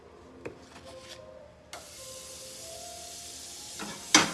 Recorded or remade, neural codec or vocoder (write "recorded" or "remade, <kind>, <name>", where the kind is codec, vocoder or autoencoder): recorded